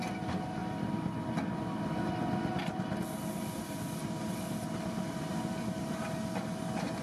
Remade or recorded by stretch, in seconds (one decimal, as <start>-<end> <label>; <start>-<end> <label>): 0.0-5.3 recorded; 5.3-6.0 remade; 6.0-7.0 recorded